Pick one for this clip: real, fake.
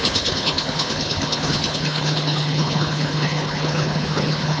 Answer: fake